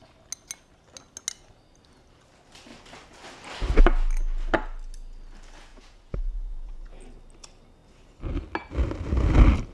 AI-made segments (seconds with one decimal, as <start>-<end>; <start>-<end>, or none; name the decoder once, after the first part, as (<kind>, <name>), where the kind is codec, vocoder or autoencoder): 5.7-6.9 (vocoder, Vocos)